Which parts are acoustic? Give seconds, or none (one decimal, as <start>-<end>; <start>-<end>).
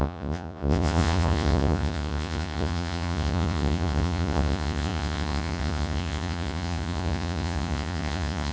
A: none